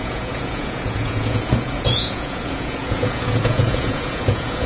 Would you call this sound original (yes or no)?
no